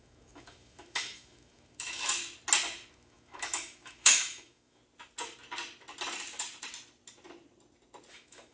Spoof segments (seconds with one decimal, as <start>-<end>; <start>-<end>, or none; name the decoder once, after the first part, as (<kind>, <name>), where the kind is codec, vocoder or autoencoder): 0.0-2.2 (autoencoder, DAC-VAE); 2.9-4.8; 8.1-8.5